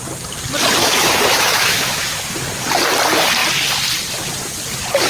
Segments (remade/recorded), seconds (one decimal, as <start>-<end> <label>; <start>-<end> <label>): 0.0-0.8 recorded; 0.8-2.2 remade; 2.2-5.1 recorded